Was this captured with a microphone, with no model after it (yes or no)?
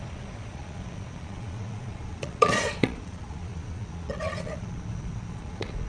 no